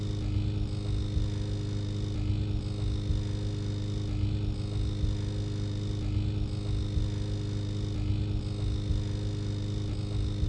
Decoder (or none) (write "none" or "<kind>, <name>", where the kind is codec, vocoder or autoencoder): none